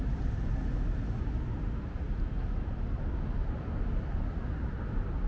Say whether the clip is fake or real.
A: real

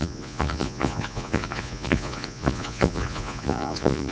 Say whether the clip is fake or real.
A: fake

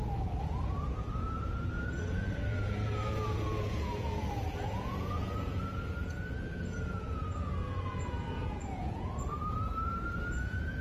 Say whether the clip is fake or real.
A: fake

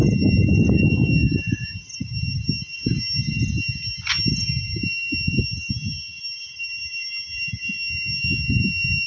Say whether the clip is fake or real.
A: real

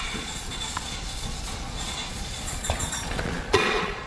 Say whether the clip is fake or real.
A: fake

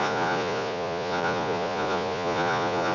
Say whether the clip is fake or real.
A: fake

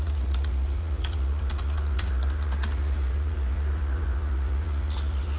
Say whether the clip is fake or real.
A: fake